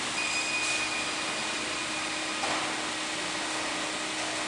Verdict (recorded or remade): recorded